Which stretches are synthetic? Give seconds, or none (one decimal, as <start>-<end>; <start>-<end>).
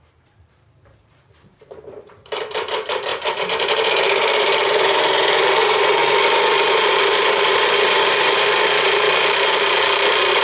0.0-6.0; 6.7-10.4